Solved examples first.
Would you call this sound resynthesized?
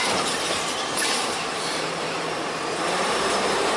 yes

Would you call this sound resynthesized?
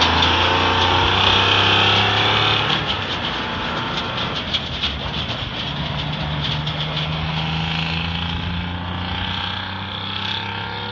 no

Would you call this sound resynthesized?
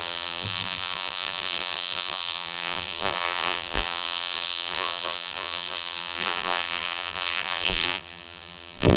yes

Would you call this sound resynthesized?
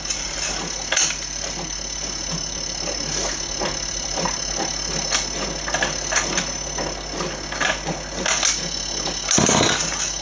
no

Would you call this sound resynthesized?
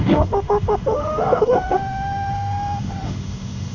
yes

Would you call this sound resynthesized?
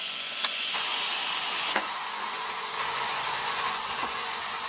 yes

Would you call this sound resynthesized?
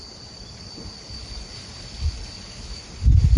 no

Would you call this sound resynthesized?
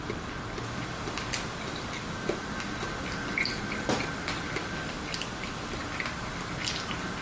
no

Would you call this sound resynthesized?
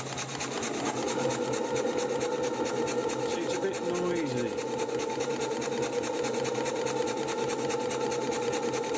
no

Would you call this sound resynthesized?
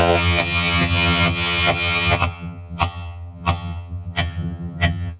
yes